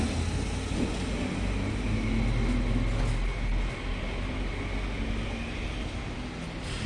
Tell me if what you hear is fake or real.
real